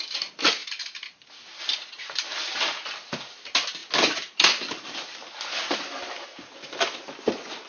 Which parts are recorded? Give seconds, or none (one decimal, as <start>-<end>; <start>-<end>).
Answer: 0.0-7.7